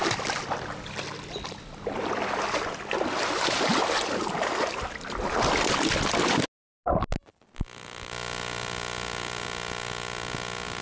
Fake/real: real